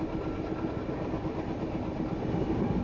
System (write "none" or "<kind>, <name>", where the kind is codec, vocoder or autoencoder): none